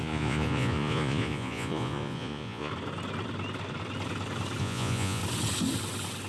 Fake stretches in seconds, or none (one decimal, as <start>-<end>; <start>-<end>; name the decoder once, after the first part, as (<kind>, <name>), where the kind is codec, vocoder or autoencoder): 0.0-2.7 (vocoder, Vocos); 4.6-5.2